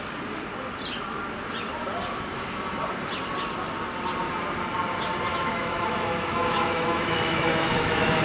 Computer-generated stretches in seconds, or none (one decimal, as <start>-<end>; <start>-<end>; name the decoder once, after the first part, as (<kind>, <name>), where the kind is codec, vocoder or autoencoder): 5.3-8.2 (autoencoder, DAC-VAE)